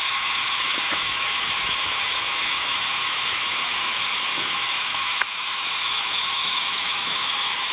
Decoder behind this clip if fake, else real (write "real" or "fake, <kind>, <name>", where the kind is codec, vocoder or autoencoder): fake, autoencoder, DAC-VAE